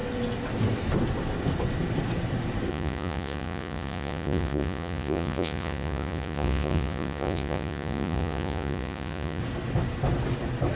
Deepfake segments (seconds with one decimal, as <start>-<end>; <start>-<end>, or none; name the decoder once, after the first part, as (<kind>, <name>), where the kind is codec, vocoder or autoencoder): 2.7-9.4 (vocoder, Vocos)